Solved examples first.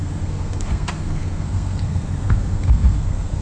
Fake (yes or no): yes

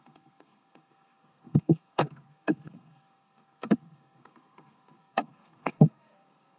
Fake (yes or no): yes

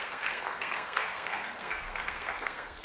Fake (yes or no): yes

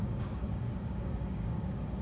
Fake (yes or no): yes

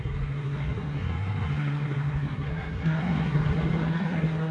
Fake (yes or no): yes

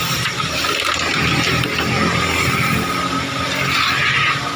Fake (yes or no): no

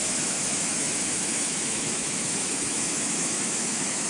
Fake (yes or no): yes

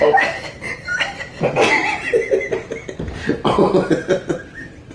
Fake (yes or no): no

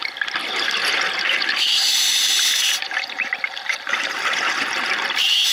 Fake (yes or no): no